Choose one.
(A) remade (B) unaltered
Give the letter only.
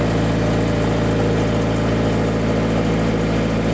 B